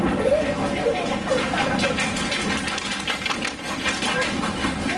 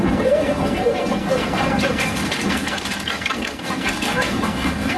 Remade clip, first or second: second